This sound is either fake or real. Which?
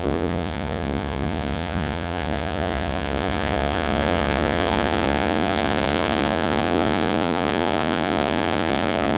fake